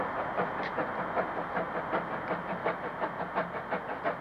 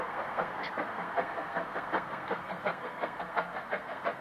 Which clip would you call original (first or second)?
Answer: first